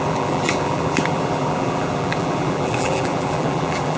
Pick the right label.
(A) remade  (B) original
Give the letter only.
A